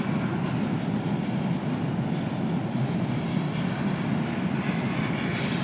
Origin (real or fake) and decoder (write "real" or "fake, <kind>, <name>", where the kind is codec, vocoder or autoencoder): real